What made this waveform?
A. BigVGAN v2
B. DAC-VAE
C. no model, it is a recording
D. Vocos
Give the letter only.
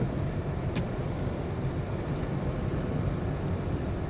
C